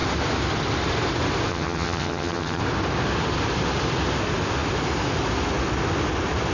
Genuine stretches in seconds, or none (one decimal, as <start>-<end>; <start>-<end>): 0.0-1.5; 2.6-6.5